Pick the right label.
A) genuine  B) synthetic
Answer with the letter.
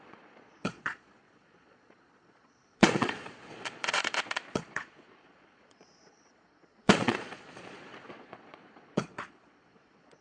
B